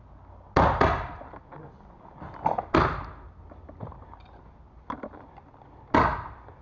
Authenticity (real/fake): real